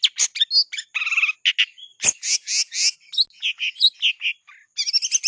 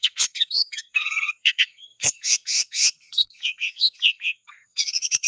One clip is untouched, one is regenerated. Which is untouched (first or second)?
first